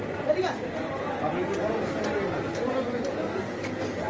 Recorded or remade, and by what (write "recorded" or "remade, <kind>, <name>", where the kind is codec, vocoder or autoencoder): recorded